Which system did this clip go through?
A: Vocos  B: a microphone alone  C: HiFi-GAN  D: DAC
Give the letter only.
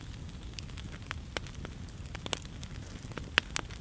B